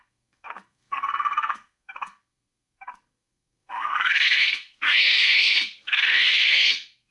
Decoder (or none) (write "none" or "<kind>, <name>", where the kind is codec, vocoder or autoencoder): codec, SNAC